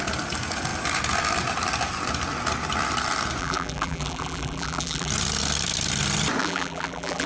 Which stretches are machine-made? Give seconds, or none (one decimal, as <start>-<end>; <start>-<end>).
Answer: 3.4-5.1; 6.4-7.3